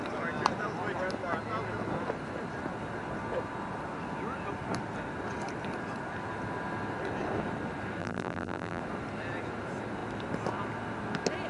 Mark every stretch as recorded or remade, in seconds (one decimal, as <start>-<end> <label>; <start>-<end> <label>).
0.0-8.0 recorded; 8.0-8.8 remade; 8.8-11.5 recorded